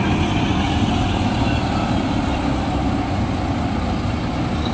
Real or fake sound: real